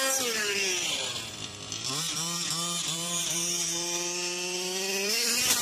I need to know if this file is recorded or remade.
remade